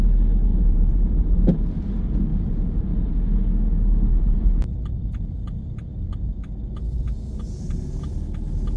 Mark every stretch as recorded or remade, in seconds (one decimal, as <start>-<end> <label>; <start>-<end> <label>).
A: 0.0-0.5 recorded; 0.5-1.6 remade; 1.6-2.3 recorded; 2.3-3.1 remade; 3.1-4.1 recorded; 4.1-5.0 remade; 5.0-8.8 recorded